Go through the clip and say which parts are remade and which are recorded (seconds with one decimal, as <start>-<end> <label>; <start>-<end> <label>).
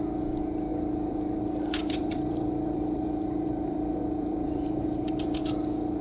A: 0.0-0.7 recorded; 0.7-1.4 remade; 1.4-1.8 recorded; 1.8-5.4 remade; 5.4-6.0 recorded